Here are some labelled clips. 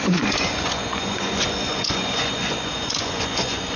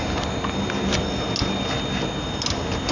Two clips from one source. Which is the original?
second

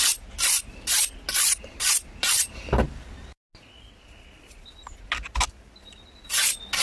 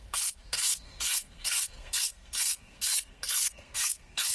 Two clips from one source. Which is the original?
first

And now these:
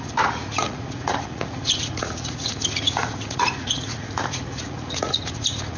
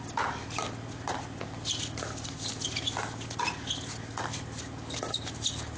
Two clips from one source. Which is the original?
second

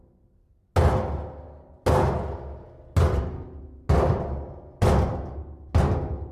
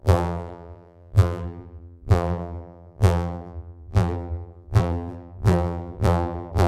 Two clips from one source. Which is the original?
first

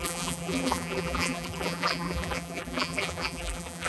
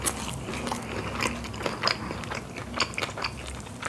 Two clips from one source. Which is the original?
second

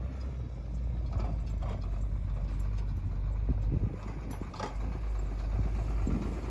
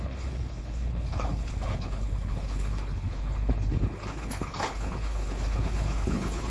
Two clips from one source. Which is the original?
first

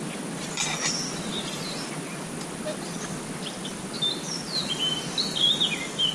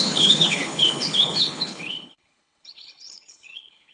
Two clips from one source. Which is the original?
first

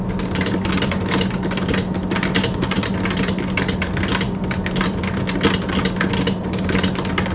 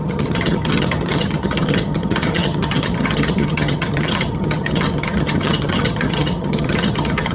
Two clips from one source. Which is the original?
first